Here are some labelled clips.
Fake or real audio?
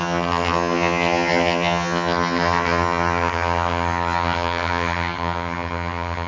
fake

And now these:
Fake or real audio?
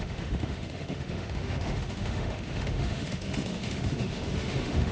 fake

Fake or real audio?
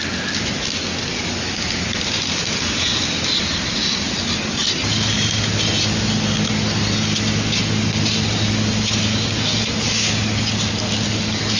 real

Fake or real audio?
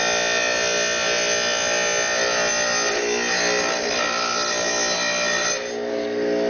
real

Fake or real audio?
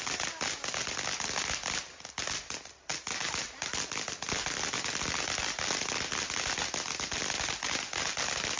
real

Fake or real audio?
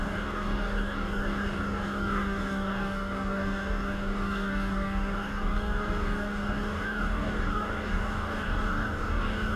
fake